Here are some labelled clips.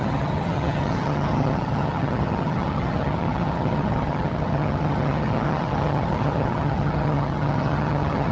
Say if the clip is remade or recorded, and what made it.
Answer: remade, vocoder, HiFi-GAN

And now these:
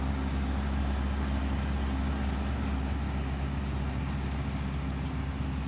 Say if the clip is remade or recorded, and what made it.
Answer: recorded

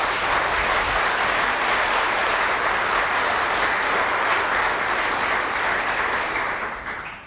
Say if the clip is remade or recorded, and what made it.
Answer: recorded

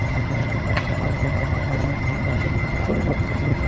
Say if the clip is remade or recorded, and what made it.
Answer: remade, vocoder, HiFi-GAN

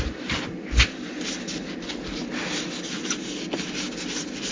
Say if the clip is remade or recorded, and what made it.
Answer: recorded